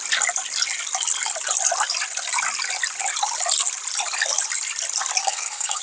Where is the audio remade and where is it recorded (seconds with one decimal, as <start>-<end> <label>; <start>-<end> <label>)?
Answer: 0.0-5.2 recorded; 5.2-5.8 remade